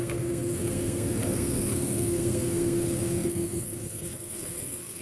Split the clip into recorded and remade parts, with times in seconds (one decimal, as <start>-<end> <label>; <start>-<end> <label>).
0.0-5.0 remade